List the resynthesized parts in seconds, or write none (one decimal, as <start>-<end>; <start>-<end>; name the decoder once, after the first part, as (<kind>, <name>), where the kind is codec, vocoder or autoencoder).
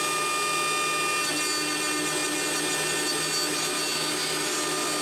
none